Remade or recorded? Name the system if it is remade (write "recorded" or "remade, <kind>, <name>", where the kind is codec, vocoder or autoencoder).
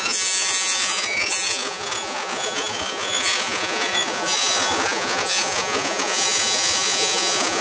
remade, vocoder, Vocos